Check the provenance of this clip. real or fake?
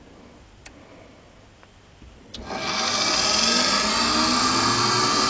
real